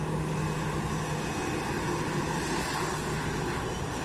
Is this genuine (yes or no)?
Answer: yes